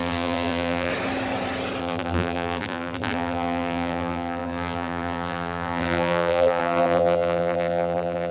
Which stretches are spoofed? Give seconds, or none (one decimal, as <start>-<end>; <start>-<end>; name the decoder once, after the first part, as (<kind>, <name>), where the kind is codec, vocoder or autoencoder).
0.0-0.9 (vocoder, BigVGAN v2); 1.8-8.3